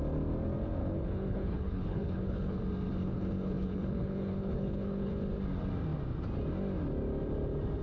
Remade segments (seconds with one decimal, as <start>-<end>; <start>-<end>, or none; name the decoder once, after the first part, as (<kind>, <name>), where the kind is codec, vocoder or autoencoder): 0.8-2.6 (codec, HILCodec); 3.0-5.2